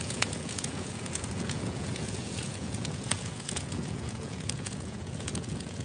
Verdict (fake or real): fake